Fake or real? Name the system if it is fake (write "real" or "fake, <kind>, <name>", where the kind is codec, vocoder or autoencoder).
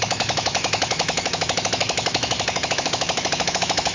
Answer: fake, autoencoder, DAC-VAE